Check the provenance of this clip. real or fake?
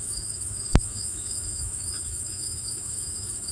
fake